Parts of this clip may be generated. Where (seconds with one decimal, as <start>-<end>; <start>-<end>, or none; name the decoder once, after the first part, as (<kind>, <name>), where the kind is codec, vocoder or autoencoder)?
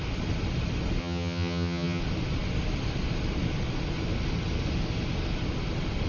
1.0-2.0 (vocoder, HiFi-GAN)